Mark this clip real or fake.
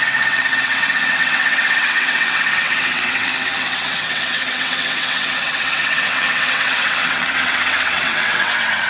fake